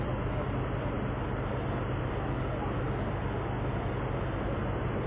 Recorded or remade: recorded